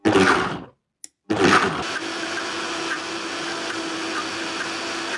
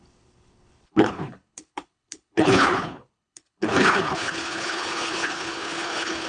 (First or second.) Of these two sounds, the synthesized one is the second